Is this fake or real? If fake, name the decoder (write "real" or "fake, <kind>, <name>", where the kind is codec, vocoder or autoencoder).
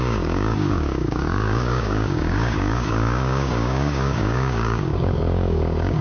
fake, codec, DAC